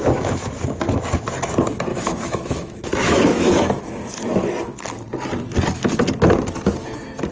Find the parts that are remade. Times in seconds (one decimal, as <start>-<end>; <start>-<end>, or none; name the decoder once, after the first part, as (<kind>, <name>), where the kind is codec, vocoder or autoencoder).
0.0-0.5 (autoencoder, DAC-VAE); 1.9-3.8